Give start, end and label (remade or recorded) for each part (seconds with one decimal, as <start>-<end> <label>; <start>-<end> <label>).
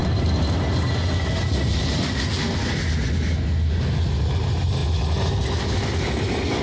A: 0.0-6.6 recorded